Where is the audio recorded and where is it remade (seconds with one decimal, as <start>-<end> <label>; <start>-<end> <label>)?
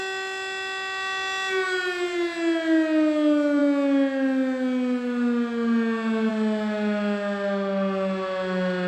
0.0-8.9 recorded